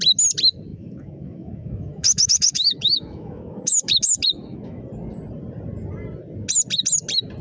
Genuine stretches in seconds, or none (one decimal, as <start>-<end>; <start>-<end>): 0.0-0.7; 4.8-7.4